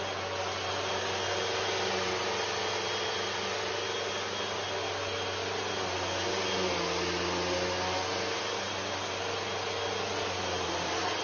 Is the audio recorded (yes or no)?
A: yes